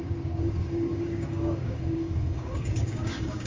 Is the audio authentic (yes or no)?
no